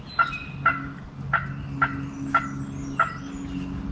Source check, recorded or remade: recorded